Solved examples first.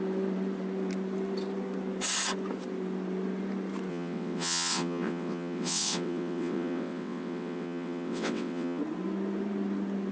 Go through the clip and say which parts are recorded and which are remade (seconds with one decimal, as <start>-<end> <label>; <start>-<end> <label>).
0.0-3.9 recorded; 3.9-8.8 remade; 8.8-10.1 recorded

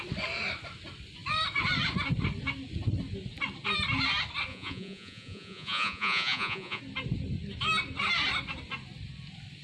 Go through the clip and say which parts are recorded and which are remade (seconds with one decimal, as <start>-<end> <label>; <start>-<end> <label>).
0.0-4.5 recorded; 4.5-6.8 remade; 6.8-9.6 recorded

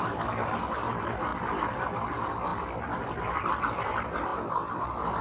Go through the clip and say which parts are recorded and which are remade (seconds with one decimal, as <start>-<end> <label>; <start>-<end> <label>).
0.0-5.2 recorded

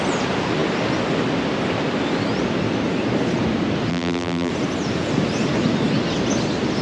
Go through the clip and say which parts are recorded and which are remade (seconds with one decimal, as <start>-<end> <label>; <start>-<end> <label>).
0.0-3.9 recorded; 3.9-4.5 remade; 4.5-6.8 recorded